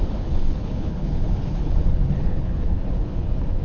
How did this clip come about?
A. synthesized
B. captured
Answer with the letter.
A